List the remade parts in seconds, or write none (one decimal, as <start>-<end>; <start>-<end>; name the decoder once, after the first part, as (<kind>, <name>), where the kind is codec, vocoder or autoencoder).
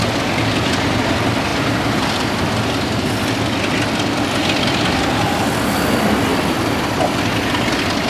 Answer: 1.5-4.4 (vocoder, BigVGAN v2); 6.3-6.9